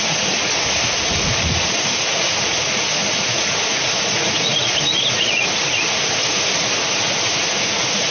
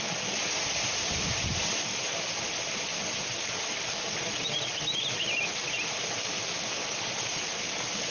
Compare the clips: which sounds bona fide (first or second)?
second